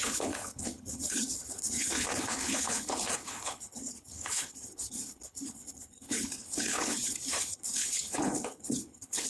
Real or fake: fake